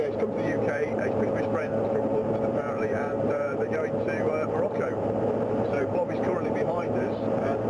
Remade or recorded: remade